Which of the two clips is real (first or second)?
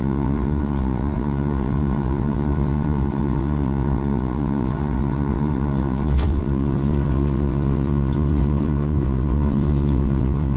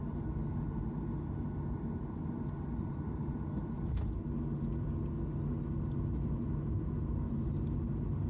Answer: second